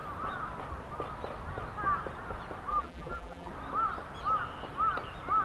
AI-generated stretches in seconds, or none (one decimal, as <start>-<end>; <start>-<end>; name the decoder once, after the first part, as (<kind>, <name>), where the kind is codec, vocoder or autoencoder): 2.7-3.5 (vocoder, BigVGAN v2)